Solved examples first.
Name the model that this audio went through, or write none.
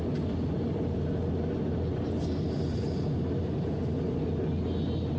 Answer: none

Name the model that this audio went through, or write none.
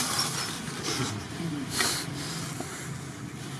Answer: none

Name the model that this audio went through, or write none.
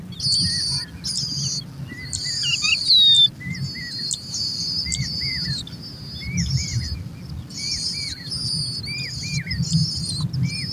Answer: none